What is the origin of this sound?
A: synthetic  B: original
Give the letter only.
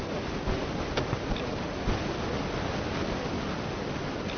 B